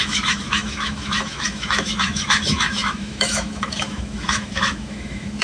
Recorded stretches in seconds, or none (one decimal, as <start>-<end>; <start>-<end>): none